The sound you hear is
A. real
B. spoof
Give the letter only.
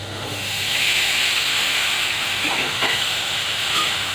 B